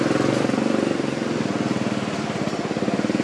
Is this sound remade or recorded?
remade